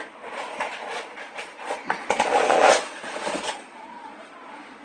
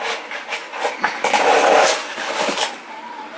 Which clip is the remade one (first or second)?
first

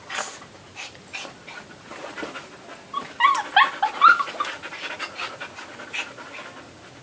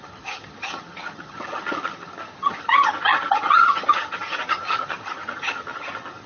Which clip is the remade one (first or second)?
second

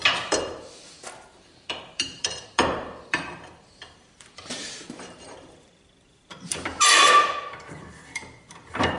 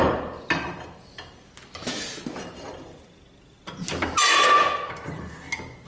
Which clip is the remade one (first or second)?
first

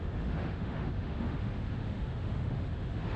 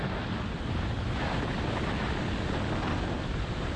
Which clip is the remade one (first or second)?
first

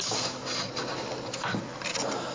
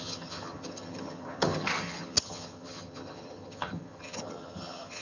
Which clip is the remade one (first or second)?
second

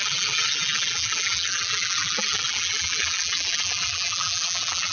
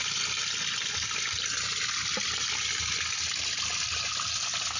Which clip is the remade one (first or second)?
first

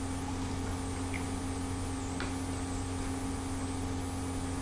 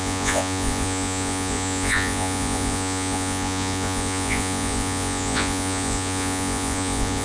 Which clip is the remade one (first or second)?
second